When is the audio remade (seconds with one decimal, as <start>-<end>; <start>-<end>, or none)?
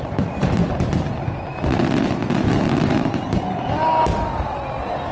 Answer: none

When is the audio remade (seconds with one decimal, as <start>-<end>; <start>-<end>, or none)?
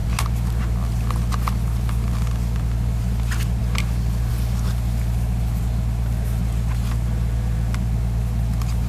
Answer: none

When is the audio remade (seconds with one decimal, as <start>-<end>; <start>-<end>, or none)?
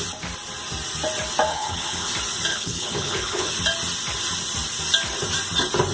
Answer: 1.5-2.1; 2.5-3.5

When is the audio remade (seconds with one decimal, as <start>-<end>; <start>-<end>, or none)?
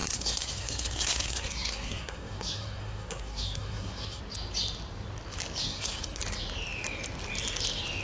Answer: 0.0-4.2; 5.6-6.2